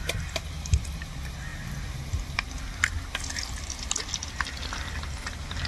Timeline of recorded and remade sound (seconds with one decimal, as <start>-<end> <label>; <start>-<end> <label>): 0.0-5.7 remade